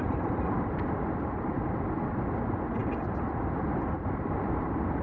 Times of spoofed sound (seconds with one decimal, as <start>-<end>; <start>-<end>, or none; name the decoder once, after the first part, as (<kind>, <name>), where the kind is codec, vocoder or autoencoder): none